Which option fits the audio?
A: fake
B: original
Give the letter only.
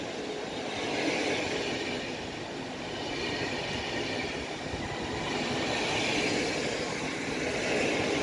B